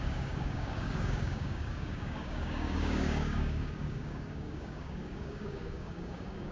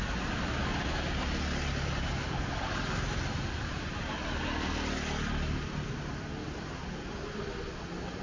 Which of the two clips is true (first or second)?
second